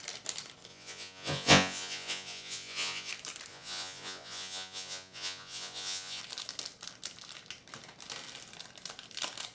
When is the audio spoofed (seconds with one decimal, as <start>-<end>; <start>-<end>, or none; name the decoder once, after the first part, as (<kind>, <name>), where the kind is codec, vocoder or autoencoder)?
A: 0.7-3.1 (vocoder, Vocos); 3.5-6.2